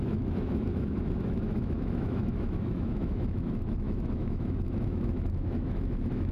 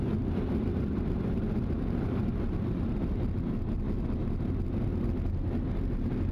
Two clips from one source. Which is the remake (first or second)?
first